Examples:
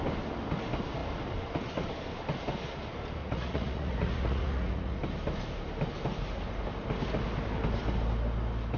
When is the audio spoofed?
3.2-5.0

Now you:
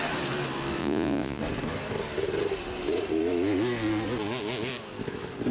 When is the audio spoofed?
0.8-1.4

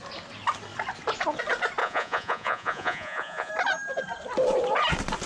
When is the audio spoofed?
1.8-3.5